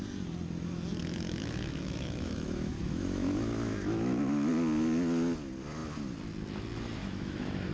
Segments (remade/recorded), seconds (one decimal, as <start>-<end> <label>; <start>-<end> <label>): 0.0-1.0 recorded; 1.0-4.5 remade; 4.5-7.0 recorded; 7.0-7.7 remade